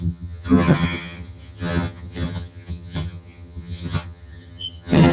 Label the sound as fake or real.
fake